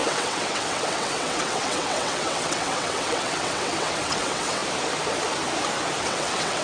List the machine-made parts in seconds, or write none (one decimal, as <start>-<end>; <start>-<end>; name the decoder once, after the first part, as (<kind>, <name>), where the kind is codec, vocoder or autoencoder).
0.0-4.6 (vocoder, WaveNeXt); 6.0-6.6